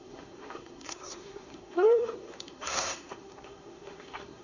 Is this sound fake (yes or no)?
yes